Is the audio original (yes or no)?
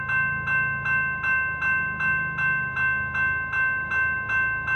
yes